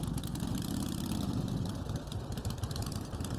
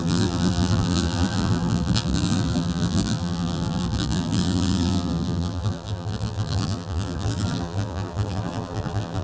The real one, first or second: first